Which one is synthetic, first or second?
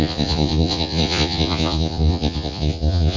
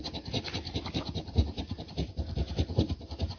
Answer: first